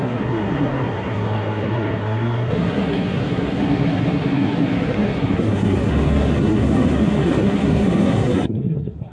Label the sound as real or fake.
fake